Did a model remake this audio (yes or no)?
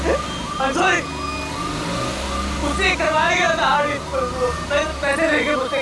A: no